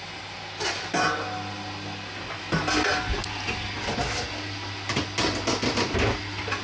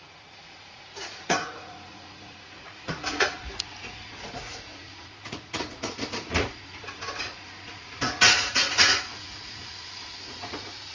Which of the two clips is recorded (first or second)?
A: first